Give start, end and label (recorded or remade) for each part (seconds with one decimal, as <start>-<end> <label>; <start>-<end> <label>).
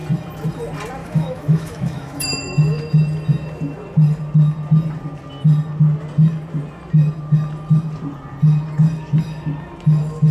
0.0-1.0 recorded; 1.0-2.8 remade; 2.8-10.3 recorded